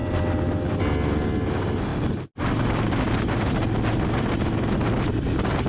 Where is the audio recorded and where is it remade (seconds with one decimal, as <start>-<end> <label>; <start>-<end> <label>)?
0.0-5.7 recorded